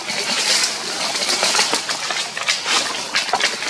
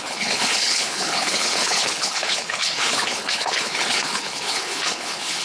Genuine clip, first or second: first